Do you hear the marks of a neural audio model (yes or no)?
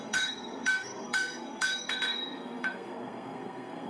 yes